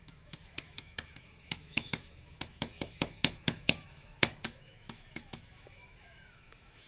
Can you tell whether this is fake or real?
fake